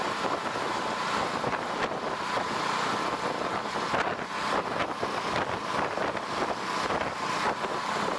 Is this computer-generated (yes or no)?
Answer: no